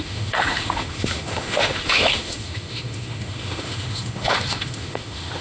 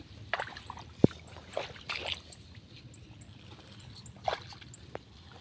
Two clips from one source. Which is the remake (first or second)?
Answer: first